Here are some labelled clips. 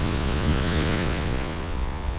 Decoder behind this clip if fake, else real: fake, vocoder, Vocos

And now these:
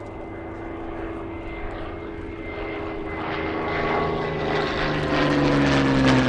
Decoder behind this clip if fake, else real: real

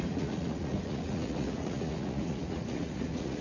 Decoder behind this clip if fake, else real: fake, vocoder, Vocos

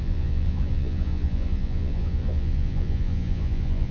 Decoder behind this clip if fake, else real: fake, vocoder, Vocos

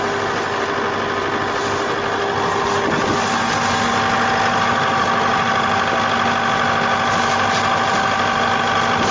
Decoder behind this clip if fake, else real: real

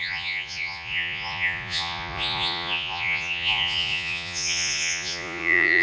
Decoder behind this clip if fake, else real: fake, vocoder, Vocos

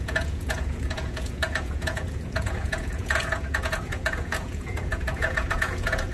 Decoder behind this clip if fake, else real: fake, vocoder, Vocos